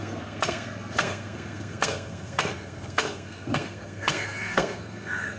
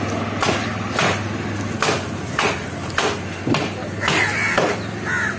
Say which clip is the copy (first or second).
first